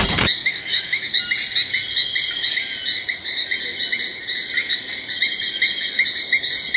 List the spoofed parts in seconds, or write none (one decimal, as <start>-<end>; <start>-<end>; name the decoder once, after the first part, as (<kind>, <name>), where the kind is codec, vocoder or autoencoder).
0.4-1.1 (autoencoder, DAC-VAE)